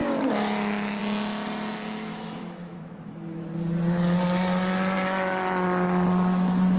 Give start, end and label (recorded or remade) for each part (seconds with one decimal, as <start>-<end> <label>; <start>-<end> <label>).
0.0-2.1 recorded; 2.1-3.4 remade; 3.4-6.8 recorded